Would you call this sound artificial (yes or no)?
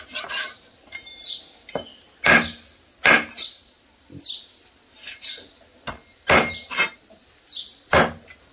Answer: no